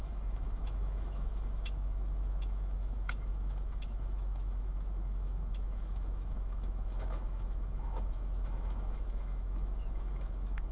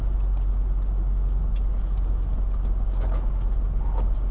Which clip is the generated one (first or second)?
first